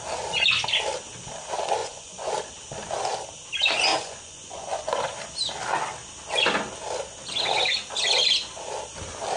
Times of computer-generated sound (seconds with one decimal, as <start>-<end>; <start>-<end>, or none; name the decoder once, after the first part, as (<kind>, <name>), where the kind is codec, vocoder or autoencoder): 1.8-2.3 (vocoder, Vocos); 3.9-5.0